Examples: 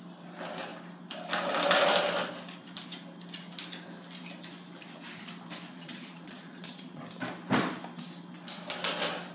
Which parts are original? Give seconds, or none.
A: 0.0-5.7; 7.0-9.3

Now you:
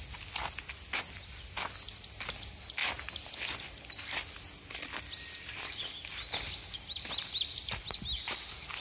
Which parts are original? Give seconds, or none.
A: 0.0-8.8